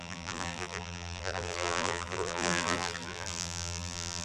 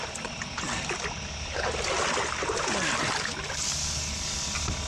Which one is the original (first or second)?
second